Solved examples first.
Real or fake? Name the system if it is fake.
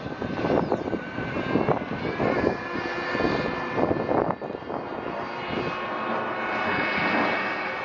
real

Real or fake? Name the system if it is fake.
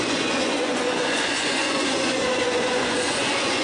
fake, vocoder, Vocos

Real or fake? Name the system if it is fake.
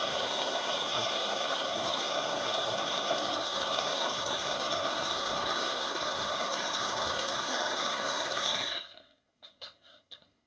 fake, codec, SNAC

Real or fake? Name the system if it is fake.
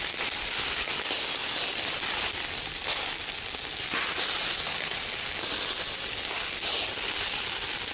real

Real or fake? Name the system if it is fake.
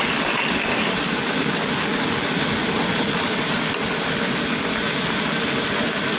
real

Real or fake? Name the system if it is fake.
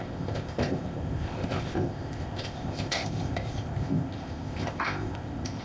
fake, codec, ZipCodec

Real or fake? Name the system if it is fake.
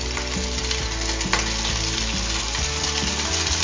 real